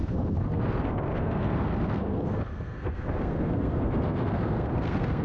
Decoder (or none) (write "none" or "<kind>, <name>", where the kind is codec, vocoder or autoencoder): codec, SNAC